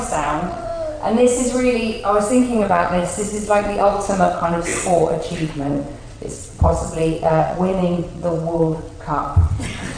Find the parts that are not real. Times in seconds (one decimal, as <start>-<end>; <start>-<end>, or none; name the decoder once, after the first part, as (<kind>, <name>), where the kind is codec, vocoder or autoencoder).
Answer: 0.0-0.7 (vocoder, WaveNeXt); 2.3-10.0